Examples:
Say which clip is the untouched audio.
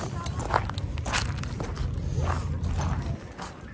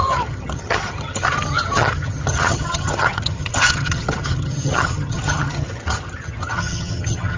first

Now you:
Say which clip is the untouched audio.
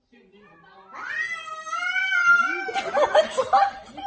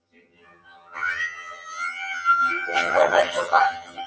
first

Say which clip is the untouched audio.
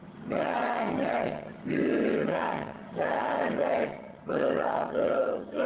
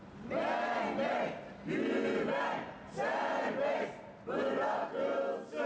second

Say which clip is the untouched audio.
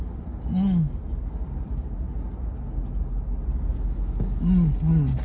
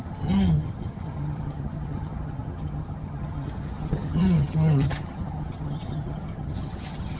first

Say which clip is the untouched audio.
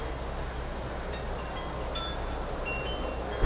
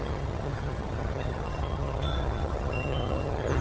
first